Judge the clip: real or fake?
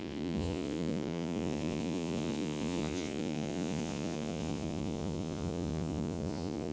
fake